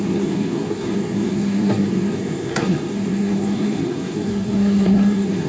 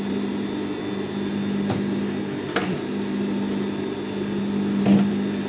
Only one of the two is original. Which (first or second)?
second